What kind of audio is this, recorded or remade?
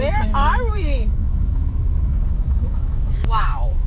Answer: remade